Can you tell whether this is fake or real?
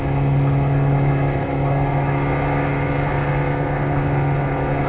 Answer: real